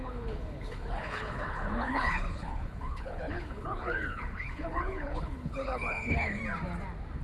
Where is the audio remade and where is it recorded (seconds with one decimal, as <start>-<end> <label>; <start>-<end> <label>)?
0.0-6.4 remade; 6.4-7.2 recorded